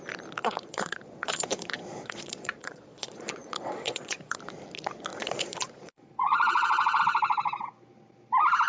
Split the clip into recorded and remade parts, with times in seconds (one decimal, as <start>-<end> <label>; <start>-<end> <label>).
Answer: 0.0-0.4 recorded; 0.4-4.4 remade; 4.4-5.1 recorded; 5.1-7.0 remade; 7.0-8.7 recorded